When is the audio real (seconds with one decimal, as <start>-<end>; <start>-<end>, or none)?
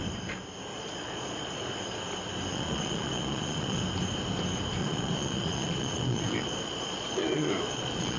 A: 0.0-0.7; 1.8-2.5; 3.8-4.8